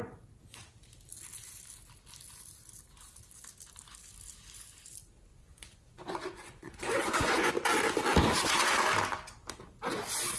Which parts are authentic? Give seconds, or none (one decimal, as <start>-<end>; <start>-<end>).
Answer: 0.0-5.3; 7.5-10.4